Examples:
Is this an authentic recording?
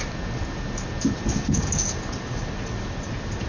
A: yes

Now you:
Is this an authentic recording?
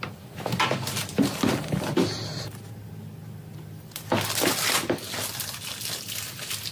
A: yes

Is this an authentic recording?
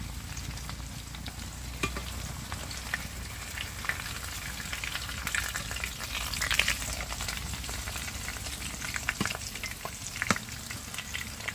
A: yes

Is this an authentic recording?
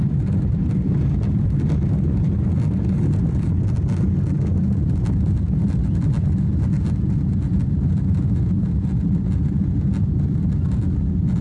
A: yes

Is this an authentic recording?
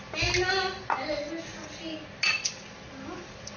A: yes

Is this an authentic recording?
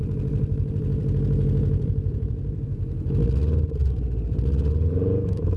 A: no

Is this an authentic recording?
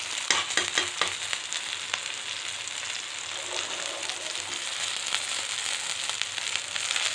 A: yes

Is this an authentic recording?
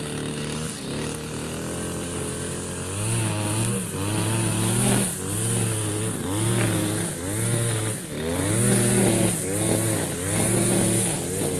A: yes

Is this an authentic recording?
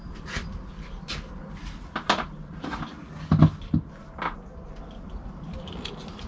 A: yes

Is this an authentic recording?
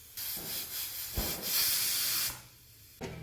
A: yes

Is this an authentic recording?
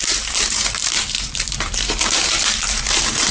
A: no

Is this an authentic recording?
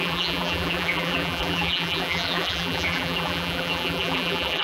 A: no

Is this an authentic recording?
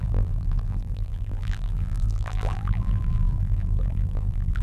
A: no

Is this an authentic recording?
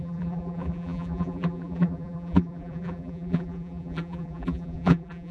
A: no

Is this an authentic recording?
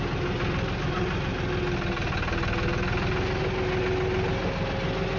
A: yes